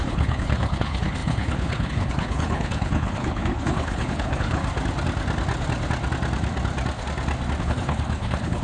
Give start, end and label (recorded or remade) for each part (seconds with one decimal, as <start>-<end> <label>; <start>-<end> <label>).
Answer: 0.0-4.6 remade; 4.6-7.6 recorded; 7.6-8.6 remade

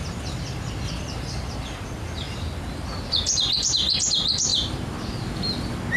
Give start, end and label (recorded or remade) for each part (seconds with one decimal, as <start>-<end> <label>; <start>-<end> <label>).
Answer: 0.0-6.0 recorded

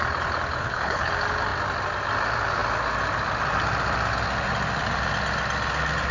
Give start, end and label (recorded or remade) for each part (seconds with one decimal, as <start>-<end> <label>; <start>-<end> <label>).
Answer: 0.0-0.6 recorded; 0.6-1.1 remade; 1.1-6.1 recorded

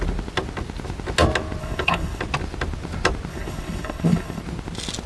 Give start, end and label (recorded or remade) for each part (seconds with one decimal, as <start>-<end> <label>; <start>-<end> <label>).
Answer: 0.0-1.6 recorded; 1.6-2.2 remade; 2.2-3.3 recorded; 3.3-4.4 remade; 4.4-5.1 recorded

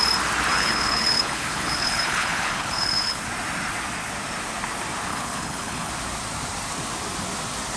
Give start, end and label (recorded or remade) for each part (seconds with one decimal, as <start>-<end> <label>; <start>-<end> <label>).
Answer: 0.0-0.5 recorded; 0.5-3.2 remade; 3.2-5.1 recorded; 5.1-5.9 remade; 5.9-7.8 recorded

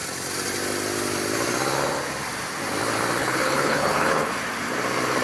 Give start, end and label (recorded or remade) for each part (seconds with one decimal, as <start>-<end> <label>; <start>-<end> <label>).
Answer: 0.0-3.2 recorded; 3.2-4.3 remade; 4.3-5.2 recorded